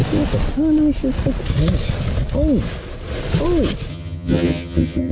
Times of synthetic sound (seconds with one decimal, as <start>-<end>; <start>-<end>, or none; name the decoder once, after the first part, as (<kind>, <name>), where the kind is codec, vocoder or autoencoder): 3.9-5.1 (vocoder, HiFi-GAN)